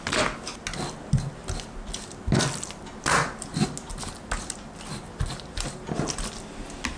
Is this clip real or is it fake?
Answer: real